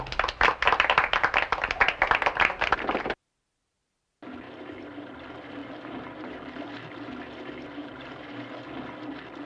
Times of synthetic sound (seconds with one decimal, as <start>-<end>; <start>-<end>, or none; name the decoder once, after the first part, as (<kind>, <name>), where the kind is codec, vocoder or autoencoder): 5.6-6.6 (vocoder, BigVGAN v2); 7.8-8.6